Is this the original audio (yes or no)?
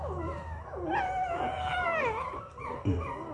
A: yes